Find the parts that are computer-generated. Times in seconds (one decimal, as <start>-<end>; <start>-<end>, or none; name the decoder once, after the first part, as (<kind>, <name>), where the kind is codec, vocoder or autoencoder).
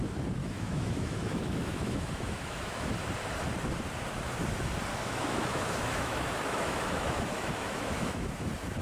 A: 0.4-2.9 (autoencoder, DAC-VAE); 4.9-8.3